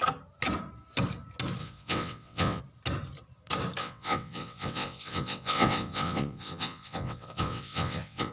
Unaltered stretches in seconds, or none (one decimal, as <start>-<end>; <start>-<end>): 0.0-1.6; 2.6-3.8